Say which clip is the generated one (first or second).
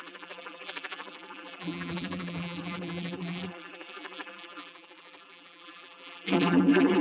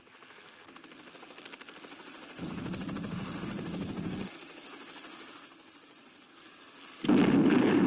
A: first